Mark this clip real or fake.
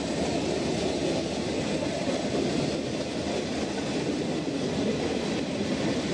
real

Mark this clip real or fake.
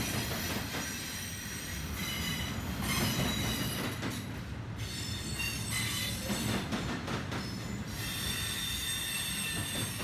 real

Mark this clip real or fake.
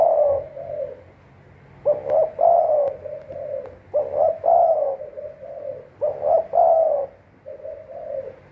real